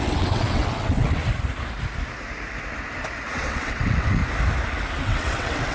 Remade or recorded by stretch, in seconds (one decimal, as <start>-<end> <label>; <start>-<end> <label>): 0.0-1.2 remade; 1.2-3.3 recorded; 3.3-4.2 remade; 4.2-5.0 recorded; 5.0-5.7 remade